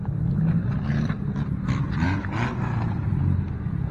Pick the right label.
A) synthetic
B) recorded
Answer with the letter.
B